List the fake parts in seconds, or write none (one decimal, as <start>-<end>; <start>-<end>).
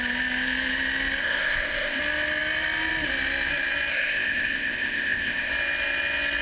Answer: 1.2-2.0; 3.9-5.5